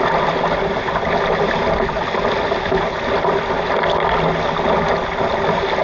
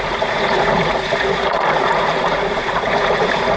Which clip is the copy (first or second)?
second